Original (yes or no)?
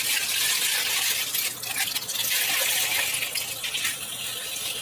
yes